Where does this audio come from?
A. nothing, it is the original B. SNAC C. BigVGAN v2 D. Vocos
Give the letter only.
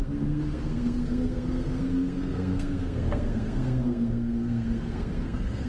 B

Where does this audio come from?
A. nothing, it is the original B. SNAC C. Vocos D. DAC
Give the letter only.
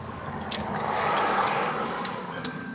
D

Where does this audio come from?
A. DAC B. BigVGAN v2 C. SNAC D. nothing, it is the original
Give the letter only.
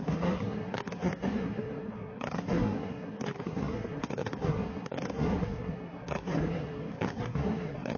C